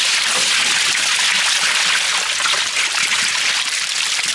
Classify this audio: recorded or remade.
recorded